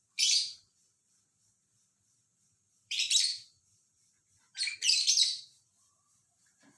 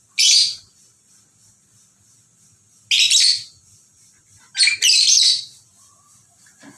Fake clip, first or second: first